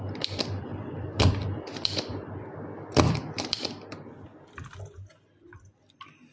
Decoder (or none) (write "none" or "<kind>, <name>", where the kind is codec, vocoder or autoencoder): vocoder, BigVGAN v2